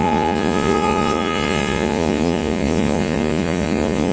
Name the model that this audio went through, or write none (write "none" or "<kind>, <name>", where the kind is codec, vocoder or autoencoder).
vocoder, Vocos